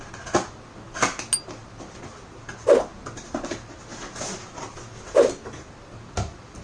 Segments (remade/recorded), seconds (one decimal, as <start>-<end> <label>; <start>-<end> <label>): 0.0-6.6 recorded